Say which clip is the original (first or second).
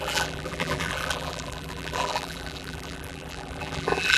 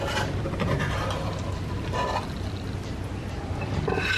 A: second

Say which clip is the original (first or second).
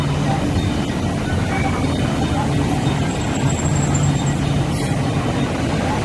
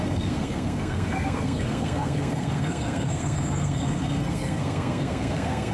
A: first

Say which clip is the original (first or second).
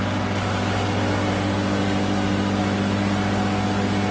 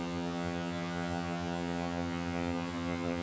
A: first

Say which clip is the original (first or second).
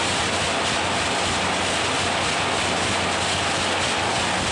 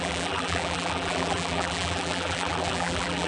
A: first